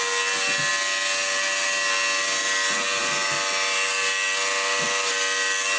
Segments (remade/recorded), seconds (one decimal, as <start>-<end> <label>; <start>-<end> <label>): 0.0-5.8 recorded